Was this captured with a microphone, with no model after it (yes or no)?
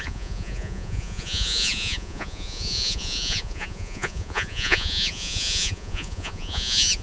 no